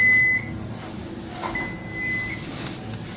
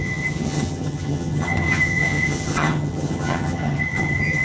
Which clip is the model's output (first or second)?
second